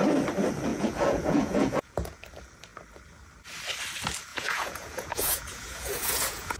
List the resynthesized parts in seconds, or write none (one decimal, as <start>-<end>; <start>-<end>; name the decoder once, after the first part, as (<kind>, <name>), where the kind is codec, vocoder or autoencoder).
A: 0.7-2.2 (vocoder, Vocos); 4.3-6.6